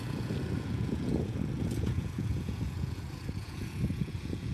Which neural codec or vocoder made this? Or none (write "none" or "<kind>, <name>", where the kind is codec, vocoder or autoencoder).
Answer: vocoder, Vocos